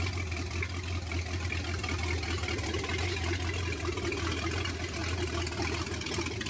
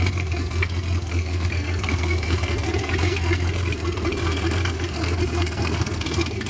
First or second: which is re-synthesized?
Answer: second